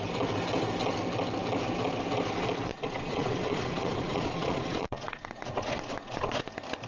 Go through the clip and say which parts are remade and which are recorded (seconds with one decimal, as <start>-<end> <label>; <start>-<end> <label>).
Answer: 0.0-2.7 recorded; 2.7-6.5 remade; 6.5-6.9 recorded